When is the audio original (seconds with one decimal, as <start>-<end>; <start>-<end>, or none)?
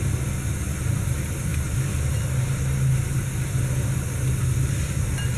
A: 0.0-5.4